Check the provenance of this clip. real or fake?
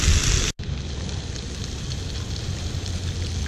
real